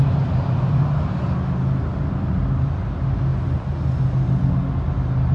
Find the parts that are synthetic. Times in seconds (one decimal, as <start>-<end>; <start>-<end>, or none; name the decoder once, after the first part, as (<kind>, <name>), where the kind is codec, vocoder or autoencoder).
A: 1.9-2.8 (vocoder, BigVGAN v2)